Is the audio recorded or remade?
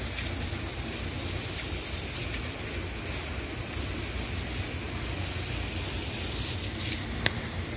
recorded